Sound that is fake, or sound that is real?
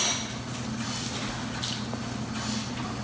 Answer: real